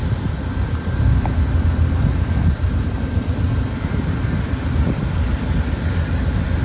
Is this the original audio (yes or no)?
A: yes